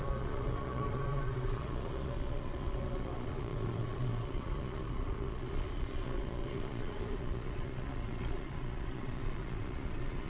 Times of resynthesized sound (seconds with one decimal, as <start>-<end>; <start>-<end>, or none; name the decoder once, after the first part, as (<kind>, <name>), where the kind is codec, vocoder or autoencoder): 0.0-10.3 (vocoder, Vocos)